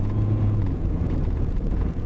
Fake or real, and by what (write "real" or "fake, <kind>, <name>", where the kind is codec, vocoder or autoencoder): fake, vocoder, Vocos